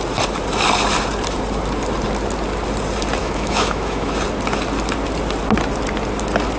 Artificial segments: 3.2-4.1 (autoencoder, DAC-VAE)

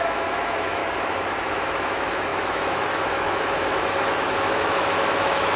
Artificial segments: 0.0-0.8 (autoencoder, DAC-VAE); 1.4-5.6

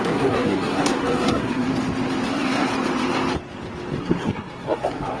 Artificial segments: 0.0-1.7 (codec, SNAC); 2.3-2.7; 4.0-5.2